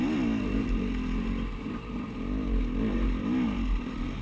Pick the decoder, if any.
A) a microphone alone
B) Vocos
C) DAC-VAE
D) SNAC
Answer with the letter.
A